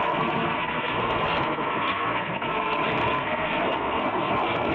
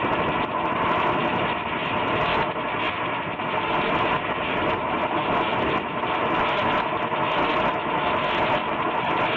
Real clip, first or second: second